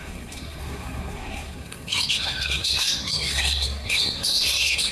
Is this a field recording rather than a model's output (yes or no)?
no